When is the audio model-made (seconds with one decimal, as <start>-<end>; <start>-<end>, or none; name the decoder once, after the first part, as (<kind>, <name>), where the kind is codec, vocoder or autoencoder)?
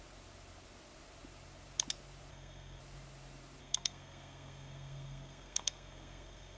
2.3-2.8 (codec, SNAC); 3.6-6.6